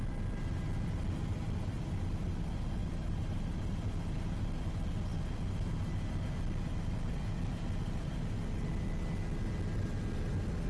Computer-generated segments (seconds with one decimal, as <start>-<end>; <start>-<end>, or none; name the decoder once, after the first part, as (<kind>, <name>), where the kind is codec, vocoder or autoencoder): 2.8-3.6 (vocoder, BigVGAN v2)